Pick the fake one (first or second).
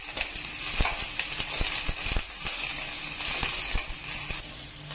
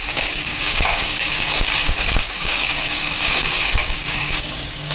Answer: second